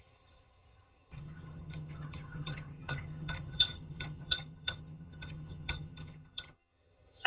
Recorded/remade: remade